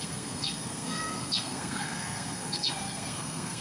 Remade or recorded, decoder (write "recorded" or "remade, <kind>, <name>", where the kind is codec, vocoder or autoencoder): remade, codec, SNAC